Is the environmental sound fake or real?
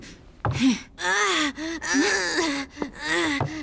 real